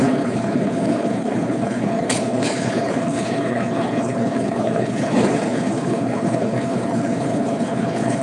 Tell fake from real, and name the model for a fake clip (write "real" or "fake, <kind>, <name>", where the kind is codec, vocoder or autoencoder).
fake, codec, HILCodec